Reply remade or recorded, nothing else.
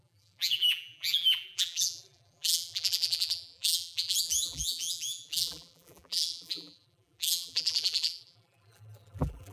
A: remade